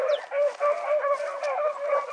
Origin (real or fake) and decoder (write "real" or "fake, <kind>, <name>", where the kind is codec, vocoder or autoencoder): real